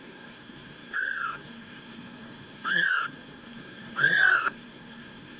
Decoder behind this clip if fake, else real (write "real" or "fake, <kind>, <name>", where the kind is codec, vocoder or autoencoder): fake, codec, SNAC